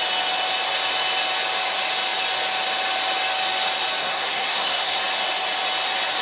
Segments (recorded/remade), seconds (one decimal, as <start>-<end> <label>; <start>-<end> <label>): 0.0-4.0 recorded; 4.0-5.0 remade; 5.0-6.2 recorded

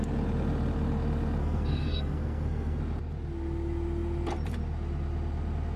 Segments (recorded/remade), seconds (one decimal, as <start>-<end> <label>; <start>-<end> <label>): 0.0-1.4 recorded; 1.4-2.8 remade; 2.8-5.8 recorded

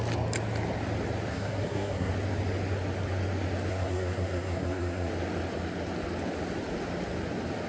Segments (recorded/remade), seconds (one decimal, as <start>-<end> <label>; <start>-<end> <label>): 0.0-1.3 recorded; 1.3-2.1 remade; 2.1-3.7 recorded; 3.7-5.1 remade; 5.1-7.7 recorded

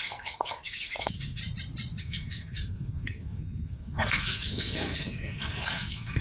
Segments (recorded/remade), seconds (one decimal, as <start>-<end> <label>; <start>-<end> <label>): 0.0-1.4 remade; 1.4-2.0 recorded; 2.0-6.2 remade

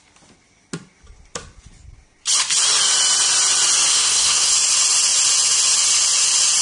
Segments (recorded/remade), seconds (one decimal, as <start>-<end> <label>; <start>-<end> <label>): 0.0-3.9 recorded; 3.9-4.5 remade; 4.5-6.6 recorded

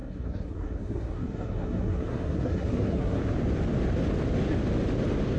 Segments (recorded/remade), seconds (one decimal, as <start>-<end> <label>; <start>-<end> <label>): 0.0-3.2 remade; 3.2-5.4 recorded